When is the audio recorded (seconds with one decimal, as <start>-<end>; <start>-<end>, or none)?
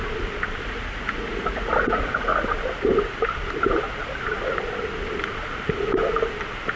0.0-0.6; 2.3-6.8